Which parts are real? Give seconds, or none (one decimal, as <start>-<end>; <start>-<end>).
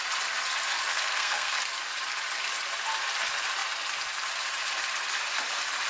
0.0-0.9; 1.6-5.9